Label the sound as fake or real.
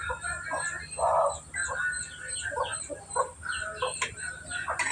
real